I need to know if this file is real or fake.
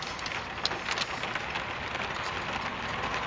real